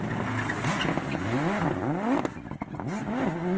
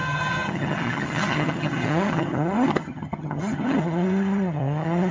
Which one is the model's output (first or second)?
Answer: second